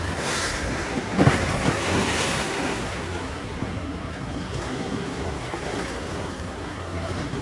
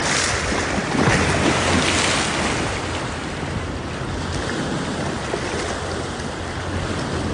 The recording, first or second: second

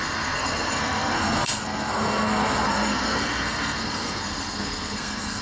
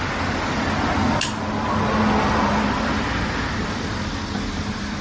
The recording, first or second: second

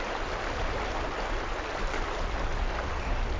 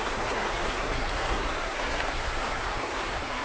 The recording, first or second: first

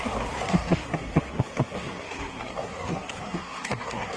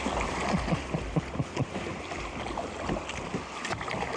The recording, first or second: second